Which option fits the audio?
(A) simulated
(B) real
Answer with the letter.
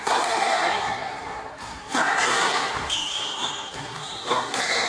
A